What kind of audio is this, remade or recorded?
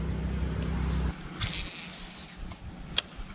recorded